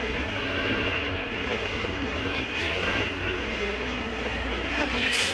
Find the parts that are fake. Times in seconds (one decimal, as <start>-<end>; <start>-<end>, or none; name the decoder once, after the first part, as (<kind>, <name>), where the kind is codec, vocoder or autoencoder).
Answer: 0.0-5.3 (codec, SNAC)